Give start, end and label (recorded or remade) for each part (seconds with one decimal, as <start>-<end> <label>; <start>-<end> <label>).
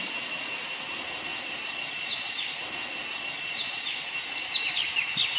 0.0-1.3 recorded; 1.3-2.0 remade; 2.0-5.4 recorded